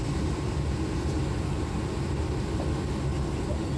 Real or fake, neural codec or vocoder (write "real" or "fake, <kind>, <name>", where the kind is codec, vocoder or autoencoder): real